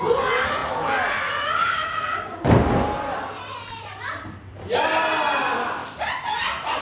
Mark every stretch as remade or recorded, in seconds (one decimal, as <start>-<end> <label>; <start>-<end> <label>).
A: 0.0-6.8 recorded